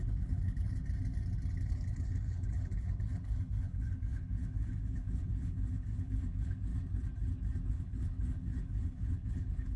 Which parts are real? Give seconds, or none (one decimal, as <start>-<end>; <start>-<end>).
0.8-1.7; 6.7-7.7